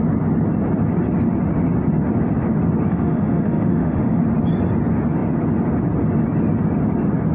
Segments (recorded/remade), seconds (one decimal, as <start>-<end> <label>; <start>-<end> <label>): 0.0-2.9 recorded; 2.9-4.2 remade; 4.2-7.3 recorded